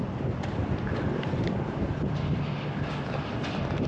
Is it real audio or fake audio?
real